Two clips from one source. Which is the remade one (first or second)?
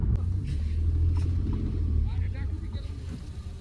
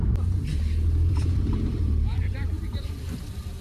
second